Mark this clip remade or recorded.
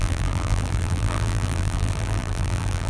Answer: remade